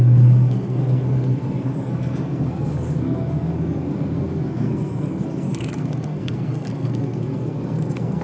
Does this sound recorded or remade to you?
remade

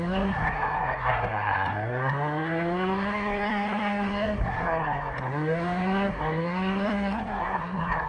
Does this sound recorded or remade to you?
remade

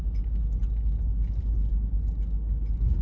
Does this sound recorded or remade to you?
recorded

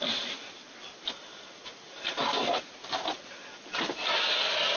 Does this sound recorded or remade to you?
recorded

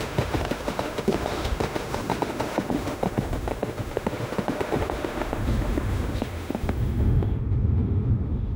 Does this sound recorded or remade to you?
remade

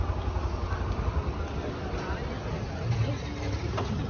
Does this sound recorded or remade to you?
recorded